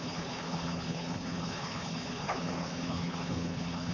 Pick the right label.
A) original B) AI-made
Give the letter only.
B